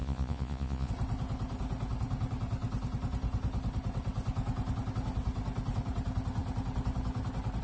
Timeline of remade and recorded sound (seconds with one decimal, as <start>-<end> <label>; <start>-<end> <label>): 0.0-0.9 remade; 0.9-7.6 recorded